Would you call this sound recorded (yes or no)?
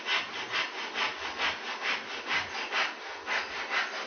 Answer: yes